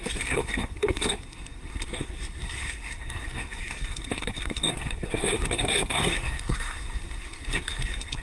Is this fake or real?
fake